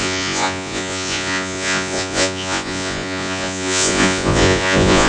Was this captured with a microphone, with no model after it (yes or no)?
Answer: no